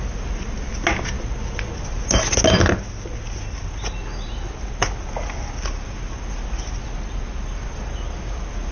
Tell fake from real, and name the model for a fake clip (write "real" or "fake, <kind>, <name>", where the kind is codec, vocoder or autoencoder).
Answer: real